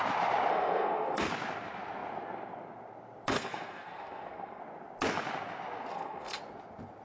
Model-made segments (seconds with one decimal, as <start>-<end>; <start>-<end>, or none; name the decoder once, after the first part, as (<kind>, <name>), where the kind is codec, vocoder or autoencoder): 0.5-1.3 (codec, SNAC); 3.3-4.6; 5.9-6.4